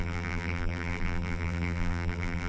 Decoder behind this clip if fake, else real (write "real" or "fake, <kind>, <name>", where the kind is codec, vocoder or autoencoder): fake, vocoder, BigVGAN v2